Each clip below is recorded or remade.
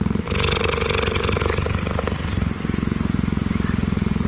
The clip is recorded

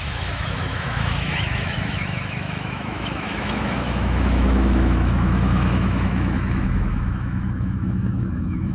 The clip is remade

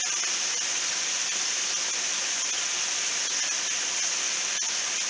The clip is recorded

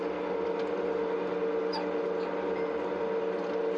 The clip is recorded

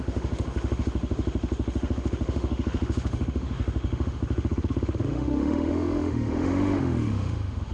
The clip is remade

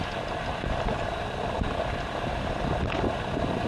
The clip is recorded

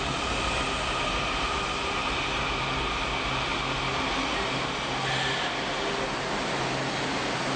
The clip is recorded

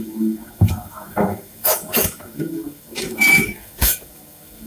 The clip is remade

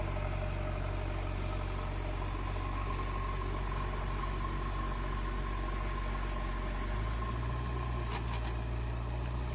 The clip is recorded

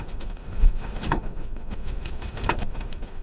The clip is remade